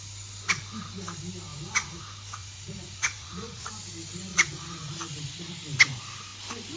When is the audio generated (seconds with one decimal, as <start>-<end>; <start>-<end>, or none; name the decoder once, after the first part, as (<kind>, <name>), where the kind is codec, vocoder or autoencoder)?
1.5-2.0 (vocoder, Vocos); 2.4-3.7; 4.3-4.9